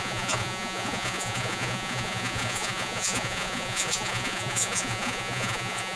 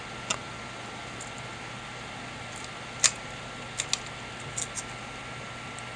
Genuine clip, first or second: second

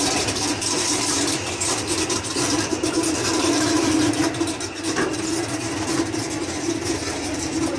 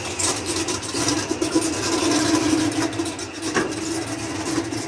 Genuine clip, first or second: second